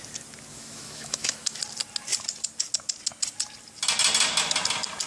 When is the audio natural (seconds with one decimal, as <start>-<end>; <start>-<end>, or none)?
0.0-0.5; 1.6-5.1